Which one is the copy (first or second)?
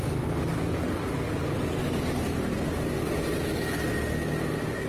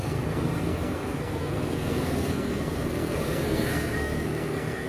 second